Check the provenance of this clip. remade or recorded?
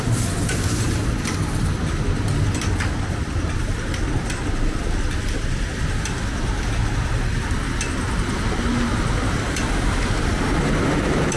recorded